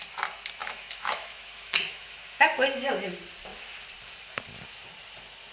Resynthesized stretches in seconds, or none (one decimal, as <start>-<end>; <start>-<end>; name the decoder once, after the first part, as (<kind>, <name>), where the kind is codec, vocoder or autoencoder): 0.6-2.4 (autoencoder, DAC-VAE)